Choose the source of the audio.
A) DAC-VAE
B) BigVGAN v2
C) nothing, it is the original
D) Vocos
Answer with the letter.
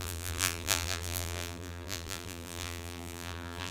B